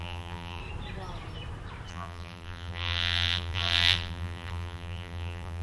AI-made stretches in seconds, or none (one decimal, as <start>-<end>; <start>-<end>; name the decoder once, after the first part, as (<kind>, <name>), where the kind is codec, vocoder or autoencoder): 0.0-0.6 (vocoder, BigVGAN v2); 1.9-5.6